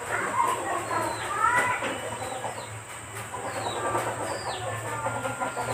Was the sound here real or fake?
real